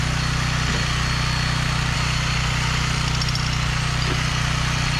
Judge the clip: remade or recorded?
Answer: recorded